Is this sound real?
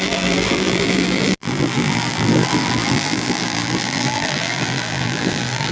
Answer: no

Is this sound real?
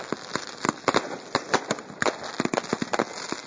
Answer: yes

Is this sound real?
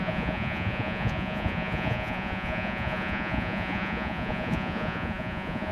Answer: no